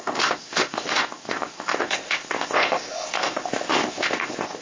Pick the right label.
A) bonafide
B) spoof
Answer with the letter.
B